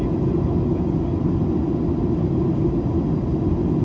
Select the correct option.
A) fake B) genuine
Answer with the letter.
B